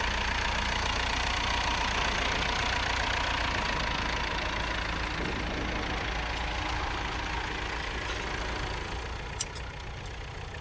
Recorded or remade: recorded